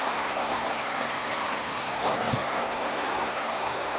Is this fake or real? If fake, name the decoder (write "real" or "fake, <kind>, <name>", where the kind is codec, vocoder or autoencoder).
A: fake, codec, SNAC